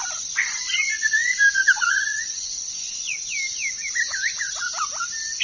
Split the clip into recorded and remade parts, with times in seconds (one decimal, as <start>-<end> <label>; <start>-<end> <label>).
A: 0.0-3.2 remade; 3.2-5.4 recorded